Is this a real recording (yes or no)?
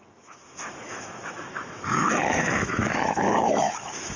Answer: no